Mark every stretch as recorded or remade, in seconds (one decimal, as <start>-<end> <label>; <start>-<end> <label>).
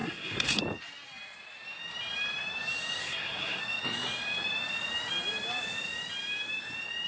0.0-0.6 remade; 0.6-3.0 recorded; 3.0-3.6 remade; 3.6-7.1 recorded